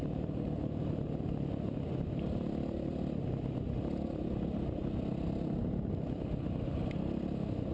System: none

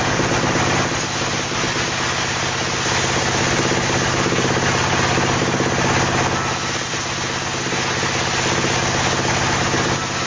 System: none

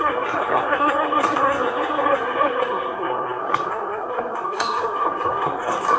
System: codec, SNAC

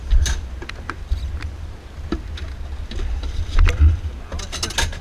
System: none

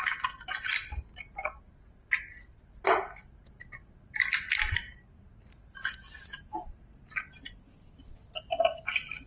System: none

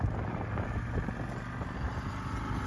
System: none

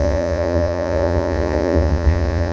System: vocoder, Vocos